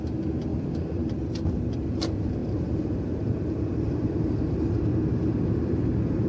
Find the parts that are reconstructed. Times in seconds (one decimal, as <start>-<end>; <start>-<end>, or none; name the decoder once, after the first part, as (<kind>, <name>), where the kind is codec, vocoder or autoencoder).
0.5-1.2 (vocoder, BigVGAN v2); 2.4-6.3